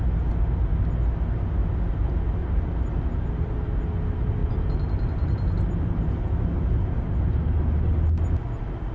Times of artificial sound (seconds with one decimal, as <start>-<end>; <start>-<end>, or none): 2.4-3.0; 4.4-5.7